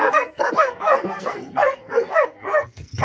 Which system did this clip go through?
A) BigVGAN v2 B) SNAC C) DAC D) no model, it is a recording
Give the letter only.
B